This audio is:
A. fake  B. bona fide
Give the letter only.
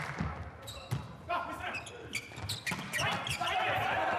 B